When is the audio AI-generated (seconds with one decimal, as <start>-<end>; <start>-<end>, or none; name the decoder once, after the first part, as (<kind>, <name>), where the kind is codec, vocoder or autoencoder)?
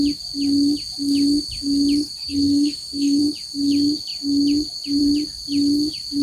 2.2-3.2 (codec, SNAC)